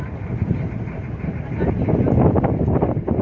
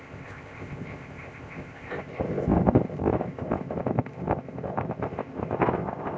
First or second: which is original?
first